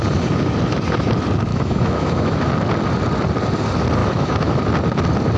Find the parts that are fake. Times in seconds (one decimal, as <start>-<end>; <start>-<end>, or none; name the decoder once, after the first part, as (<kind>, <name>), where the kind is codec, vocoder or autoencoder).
1.5-2.5 (autoencoder, DAC-VAE); 4.0-4.6